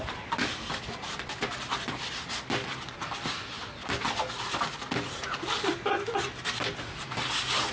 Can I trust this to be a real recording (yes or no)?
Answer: yes